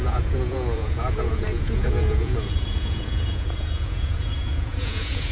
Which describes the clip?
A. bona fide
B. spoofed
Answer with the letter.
B